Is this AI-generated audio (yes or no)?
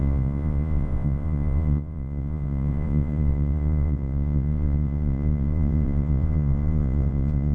yes